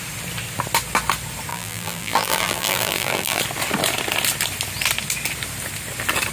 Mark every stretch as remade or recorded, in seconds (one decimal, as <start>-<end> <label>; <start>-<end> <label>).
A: 0.0-1.5 recorded; 1.5-3.4 remade; 3.4-6.3 recorded